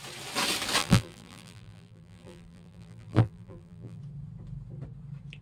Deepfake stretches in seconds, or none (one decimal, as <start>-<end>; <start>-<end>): 0.8-4.0